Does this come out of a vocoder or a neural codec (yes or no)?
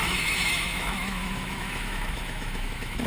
yes